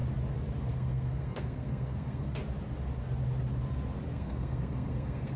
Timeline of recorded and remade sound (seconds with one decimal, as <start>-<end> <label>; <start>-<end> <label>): 0.0-0.7 recorded; 0.7-2.4 remade; 2.4-4.1 recorded; 4.1-5.4 remade